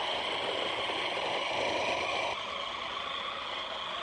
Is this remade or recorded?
recorded